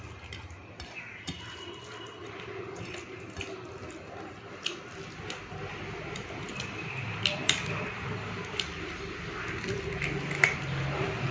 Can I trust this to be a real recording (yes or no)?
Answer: yes